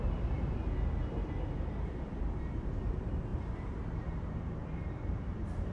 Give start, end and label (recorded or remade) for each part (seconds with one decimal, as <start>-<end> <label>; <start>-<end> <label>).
0.0-0.6 remade; 0.6-1.9 recorded; 1.9-5.7 remade